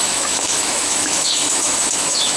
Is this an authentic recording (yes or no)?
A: no